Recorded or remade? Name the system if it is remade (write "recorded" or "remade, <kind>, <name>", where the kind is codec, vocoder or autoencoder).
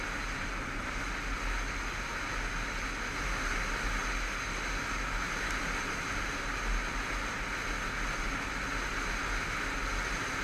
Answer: recorded